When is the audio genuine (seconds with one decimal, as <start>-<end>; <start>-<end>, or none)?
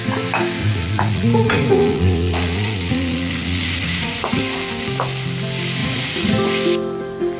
0.0-0.6; 4.4-5.8; 6.3-7.4